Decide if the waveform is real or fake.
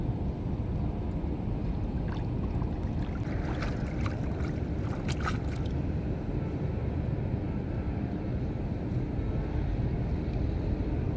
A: real